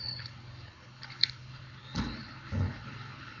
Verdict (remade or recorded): remade